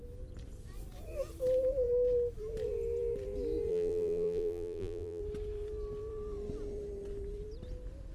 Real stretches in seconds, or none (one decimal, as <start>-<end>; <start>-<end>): 0.0-3.7; 5.2-8.1

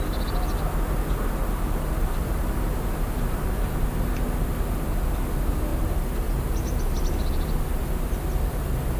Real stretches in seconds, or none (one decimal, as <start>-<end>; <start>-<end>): 0.0-2.0; 3.7-5.7; 6.8-9.0

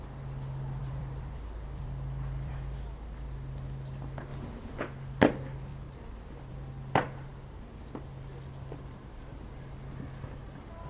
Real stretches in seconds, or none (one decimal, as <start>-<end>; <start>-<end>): 0.0-0.8; 2.5-5.7; 6.5-10.9

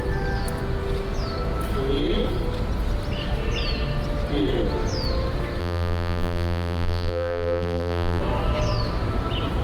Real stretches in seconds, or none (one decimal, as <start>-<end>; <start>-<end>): 0.0-5.6; 8.2-9.6